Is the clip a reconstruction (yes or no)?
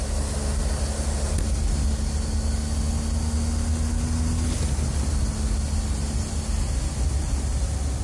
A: no